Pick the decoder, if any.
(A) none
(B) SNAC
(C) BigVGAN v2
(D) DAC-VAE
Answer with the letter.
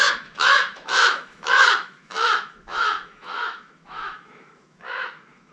D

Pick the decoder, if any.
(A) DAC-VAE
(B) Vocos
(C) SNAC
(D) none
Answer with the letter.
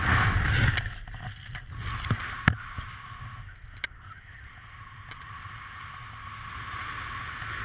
D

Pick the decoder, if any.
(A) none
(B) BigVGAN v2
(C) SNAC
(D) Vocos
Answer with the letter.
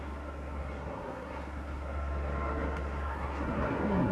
C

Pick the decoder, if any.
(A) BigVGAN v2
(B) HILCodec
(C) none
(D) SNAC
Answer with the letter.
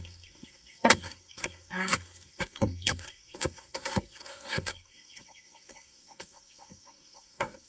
D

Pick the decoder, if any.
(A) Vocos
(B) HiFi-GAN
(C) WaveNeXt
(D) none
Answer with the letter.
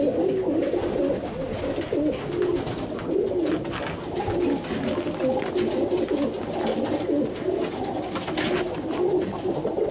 D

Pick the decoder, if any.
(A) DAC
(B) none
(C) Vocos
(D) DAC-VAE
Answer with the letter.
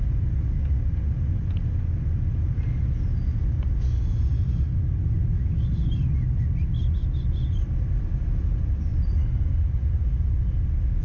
B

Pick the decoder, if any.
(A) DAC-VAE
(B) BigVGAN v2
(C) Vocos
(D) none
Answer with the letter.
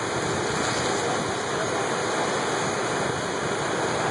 D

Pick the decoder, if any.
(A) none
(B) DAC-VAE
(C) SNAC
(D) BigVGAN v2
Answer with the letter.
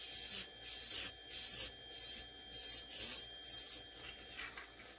A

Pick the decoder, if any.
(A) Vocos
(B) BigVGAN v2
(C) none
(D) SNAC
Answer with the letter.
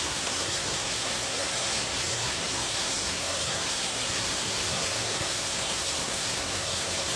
D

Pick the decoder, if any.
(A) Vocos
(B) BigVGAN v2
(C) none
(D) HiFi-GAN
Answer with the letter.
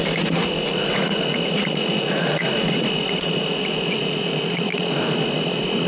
A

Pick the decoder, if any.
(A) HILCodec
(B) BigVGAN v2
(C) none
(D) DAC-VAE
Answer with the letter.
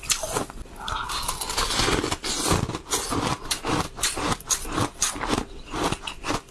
C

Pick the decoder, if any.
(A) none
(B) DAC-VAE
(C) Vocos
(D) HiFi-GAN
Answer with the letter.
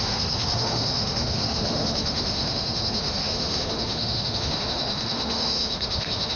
B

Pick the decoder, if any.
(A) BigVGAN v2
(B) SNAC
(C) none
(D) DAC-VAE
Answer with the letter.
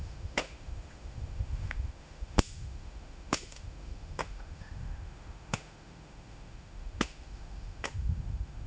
D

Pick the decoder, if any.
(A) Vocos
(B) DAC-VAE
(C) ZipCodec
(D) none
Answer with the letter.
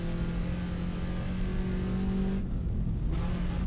D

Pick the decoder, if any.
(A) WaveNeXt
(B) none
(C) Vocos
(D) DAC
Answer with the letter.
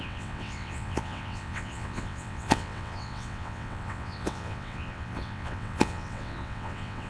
A